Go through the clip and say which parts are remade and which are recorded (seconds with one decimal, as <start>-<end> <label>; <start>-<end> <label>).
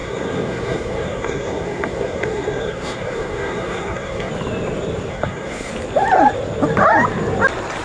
0.0-4.3 remade; 4.3-5.1 recorded; 5.1-5.7 remade; 5.7-7.8 recorded